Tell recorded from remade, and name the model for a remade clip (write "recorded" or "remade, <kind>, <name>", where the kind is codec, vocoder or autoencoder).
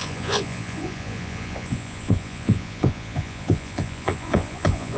remade, vocoder, Vocos